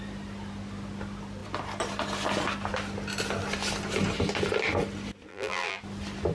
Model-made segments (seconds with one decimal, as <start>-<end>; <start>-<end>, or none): 5.3-5.8